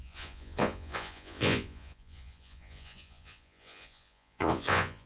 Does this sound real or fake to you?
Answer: fake